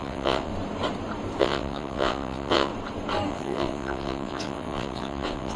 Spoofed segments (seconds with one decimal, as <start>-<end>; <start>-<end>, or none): 0.0-0.5; 1.4-2.7; 3.3-5.6